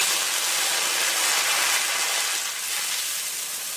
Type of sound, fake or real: real